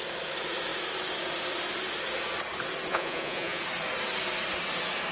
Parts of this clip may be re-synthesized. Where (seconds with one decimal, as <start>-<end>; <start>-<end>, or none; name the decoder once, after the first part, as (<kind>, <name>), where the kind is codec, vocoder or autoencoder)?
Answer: 2.9-3.6 (vocoder, Vocos)